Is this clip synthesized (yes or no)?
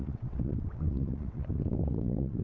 yes